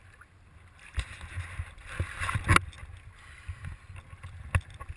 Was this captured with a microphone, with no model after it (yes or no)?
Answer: yes